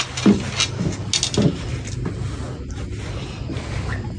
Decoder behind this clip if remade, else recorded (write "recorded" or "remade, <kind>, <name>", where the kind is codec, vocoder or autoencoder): recorded